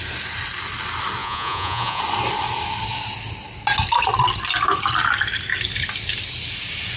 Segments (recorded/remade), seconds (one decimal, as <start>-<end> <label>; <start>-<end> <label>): 0.0-1.2 recorded; 1.2-2.0 remade; 2.0-7.0 recorded